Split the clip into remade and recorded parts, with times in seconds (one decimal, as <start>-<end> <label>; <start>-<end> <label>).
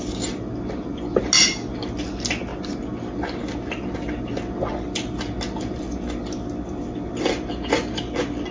0.0-8.5 recorded